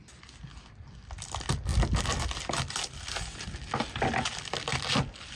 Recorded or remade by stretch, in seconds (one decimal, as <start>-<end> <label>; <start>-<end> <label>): 0.0-5.4 recorded

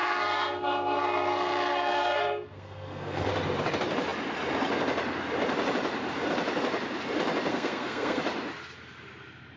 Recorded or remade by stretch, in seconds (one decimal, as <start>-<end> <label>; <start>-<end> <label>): 0.0-3.3 remade; 3.3-7.5 recorded; 7.5-8.2 remade; 8.2-9.6 recorded

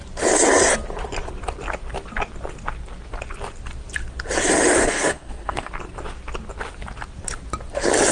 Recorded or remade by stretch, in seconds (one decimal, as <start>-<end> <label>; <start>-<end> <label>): 0.0-4.8 recorded; 4.8-5.7 remade; 5.7-8.1 recorded

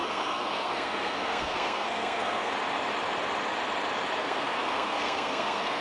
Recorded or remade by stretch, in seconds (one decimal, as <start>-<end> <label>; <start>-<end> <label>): 0.0-2.5 remade; 2.5-4.2 recorded; 4.2-5.8 remade

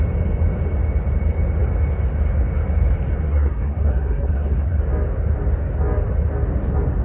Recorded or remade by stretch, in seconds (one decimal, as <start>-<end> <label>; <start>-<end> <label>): 0.0-3.2 recorded; 3.2-4.8 remade; 4.8-7.0 recorded

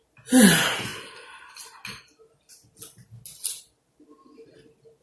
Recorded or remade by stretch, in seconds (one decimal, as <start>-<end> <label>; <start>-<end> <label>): 0.0-5.0 recorded

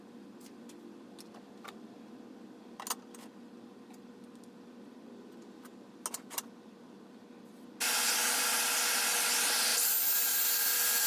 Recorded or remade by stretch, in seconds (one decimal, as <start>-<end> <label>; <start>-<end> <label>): 0.0-11.1 recorded